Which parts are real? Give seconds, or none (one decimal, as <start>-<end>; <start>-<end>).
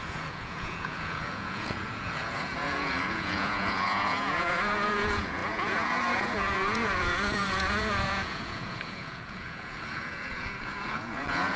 none